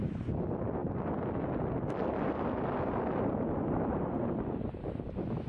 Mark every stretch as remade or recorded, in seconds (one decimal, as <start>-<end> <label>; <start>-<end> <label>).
0.0-5.5 recorded